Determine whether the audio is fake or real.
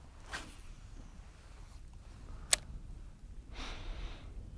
real